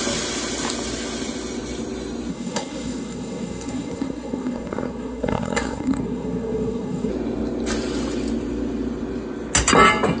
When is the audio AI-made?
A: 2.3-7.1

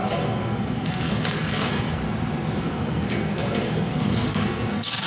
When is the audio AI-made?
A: 0.0-2.0; 2.6-5.1